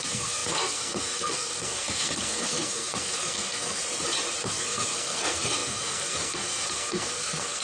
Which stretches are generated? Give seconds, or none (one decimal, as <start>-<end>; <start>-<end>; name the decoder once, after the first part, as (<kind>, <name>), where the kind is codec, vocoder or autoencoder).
0.0-3.8 (codec, SNAC); 4.4-7.6